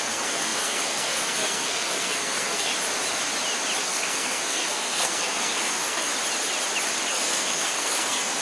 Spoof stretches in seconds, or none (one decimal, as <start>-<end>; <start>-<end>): 0.0-2.7; 3.8-6.1; 7.1-8.4